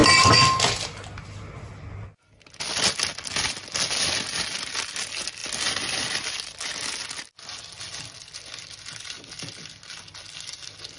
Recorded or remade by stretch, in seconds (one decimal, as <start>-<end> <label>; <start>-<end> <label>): 0.0-11.0 recorded

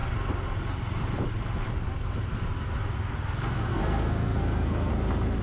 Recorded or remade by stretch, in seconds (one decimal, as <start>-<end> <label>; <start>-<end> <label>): 0.0-3.7 recorded; 3.7-4.9 remade; 4.9-5.4 recorded

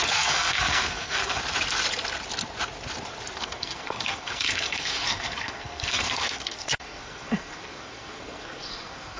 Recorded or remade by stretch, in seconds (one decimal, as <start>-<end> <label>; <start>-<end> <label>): 0.0-1.4 remade; 1.4-3.4 recorded; 3.4-9.2 remade

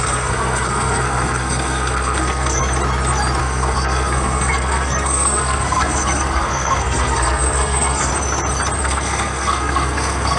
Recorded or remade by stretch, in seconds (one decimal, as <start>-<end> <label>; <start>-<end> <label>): 0.0-2.6 remade; 2.6-3.4 recorded; 3.4-8.1 remade; 8.1-8.8 recorded; 8.8-10.4 remade

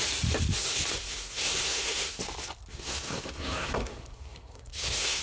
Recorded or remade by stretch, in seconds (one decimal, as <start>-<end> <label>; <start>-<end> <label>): 0.0-0.6 recorded; 0.6-2.2 remade; 2.2-2.7 recorded; 2.7-5.2 remade

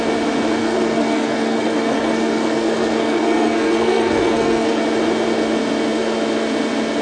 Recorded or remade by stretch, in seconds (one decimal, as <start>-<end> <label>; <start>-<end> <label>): 0.0-0.6 recorded; 0.6-4.8 remade; 4.8-7.0 recorded

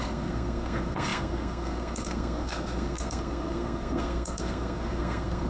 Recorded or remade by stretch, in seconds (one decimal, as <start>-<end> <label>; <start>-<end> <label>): 0.0-5.5 remade